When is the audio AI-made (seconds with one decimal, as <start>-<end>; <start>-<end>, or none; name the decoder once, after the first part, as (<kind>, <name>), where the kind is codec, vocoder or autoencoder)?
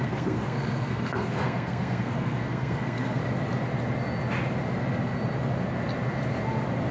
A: 0.0-3.2 (codec, SNAC)